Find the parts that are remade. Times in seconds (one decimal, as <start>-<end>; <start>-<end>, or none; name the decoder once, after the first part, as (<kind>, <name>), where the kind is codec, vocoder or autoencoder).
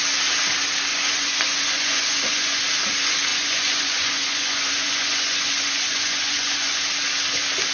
0.9-2.6 (vocoder, Vocos); 3.3-6.8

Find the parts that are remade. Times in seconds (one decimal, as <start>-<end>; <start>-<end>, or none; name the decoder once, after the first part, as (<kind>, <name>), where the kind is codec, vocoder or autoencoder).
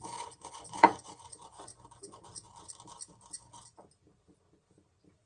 0.0-1.7 (vocoder, Vocos)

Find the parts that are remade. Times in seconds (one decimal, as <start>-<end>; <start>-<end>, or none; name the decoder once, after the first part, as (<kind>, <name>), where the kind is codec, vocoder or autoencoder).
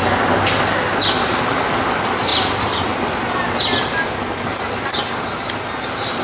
none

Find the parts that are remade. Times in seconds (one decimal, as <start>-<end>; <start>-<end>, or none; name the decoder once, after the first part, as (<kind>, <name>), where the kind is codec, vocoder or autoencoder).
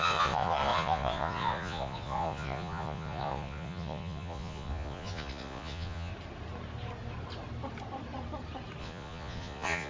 0.0-6.1 (vocoder, Vocos); 8.8-9.9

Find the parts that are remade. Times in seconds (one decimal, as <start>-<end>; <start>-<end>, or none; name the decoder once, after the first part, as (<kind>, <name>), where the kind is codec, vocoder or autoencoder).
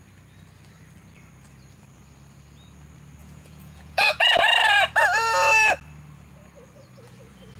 3.2-4.4 (vocoder, Vocos)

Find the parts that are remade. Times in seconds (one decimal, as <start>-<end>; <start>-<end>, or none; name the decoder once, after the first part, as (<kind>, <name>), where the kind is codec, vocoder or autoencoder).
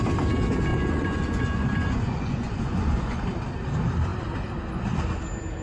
0.7-3.2 (vocoder, Vocos)